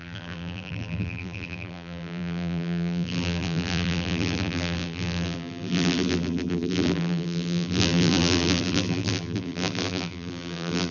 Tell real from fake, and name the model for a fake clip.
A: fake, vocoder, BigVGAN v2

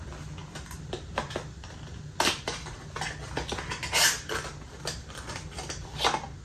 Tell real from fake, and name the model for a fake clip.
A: real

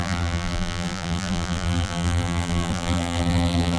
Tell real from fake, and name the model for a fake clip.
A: fake, vocoder, BigVGAN v2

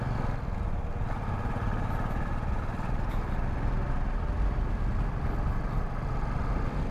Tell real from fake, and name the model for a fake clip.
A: real